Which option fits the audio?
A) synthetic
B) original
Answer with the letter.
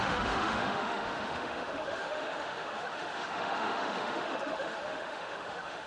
A